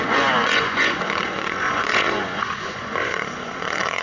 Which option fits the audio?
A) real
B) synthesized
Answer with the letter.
B